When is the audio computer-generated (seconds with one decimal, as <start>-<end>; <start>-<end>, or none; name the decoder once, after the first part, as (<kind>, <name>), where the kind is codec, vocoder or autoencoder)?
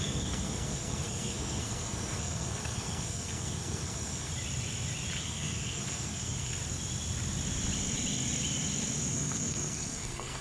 0.0-4.3 (codec, SNAC); 5.2-6.6; 9.1-10.4